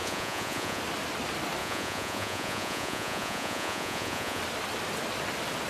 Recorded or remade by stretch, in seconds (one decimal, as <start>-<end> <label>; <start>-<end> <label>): 0.0-0.8 remade; 0.8-1.6 recorded; 1.6-4.4 remade; 4.4-5.7 recorded